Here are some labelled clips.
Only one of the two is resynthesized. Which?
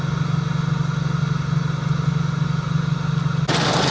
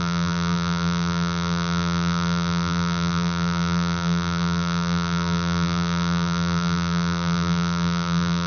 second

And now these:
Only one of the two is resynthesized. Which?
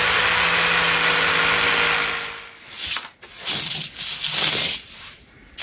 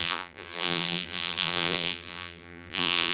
second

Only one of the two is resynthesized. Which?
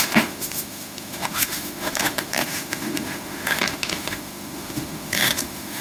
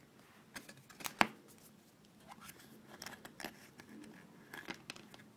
first